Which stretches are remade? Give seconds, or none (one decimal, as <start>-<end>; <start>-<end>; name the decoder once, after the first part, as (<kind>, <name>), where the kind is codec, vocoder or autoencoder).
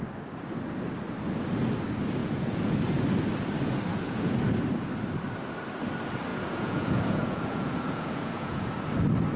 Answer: 2.2-2.8 (vocoder, Vocos); 3.9-4.4; 6.3-8.7